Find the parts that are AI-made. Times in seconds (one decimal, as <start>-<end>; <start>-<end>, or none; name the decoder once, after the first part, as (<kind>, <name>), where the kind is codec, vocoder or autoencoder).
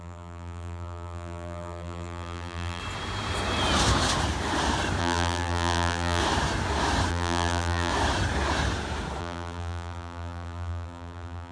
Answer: 0.0-2.8 (vocoder, BigVGAN v2); 5.0-6.2; 7.1-7.9; 9.2-11.5